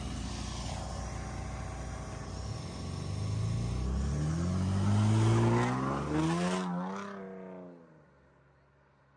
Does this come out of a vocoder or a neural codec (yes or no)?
no